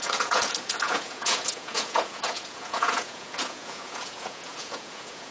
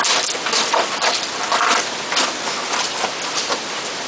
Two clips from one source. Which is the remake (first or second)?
first